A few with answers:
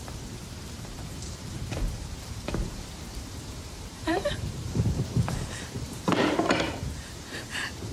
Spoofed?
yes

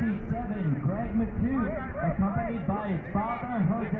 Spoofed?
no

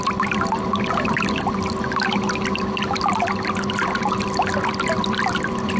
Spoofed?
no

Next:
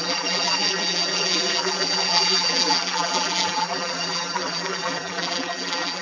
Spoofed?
yes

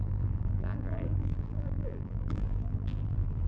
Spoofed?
yes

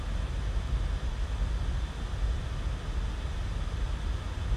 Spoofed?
no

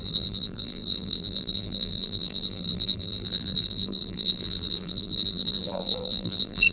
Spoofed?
yes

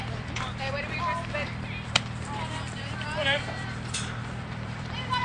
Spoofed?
yes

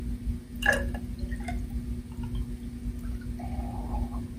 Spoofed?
no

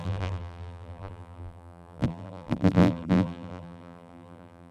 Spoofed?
yes